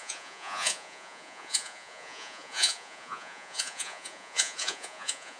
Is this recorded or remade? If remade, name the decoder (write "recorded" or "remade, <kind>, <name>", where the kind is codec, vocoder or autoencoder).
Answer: remade, vocoder, Vocos